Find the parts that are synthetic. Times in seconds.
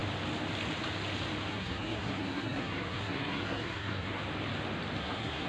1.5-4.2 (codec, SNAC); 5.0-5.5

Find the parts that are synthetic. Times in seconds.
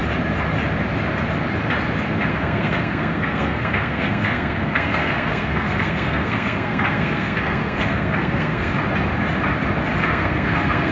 2.3-8.7 (codec, SNAC); 10.0-10.9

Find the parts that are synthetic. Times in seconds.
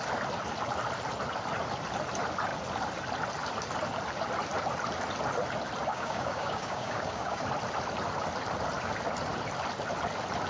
5.9-7.4 (codec, DAC)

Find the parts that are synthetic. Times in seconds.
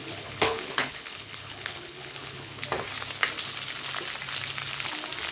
0.0-2.6 (codec, HILCodec)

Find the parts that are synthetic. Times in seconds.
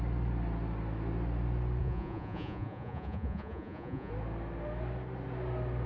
1.8-4.1 (vocoder, Vocos)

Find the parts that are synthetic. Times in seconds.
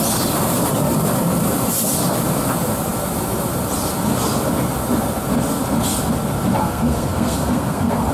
6.6-8.1 (codec, SNAC)